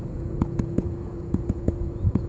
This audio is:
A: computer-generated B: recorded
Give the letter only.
A